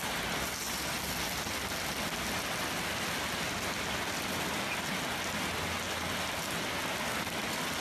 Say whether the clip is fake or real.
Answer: real